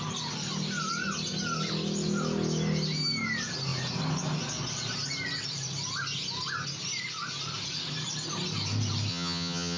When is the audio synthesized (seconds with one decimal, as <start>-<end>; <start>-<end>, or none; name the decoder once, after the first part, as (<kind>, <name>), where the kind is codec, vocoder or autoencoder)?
9.1-9.8 (vocoder, HiFi-GAN)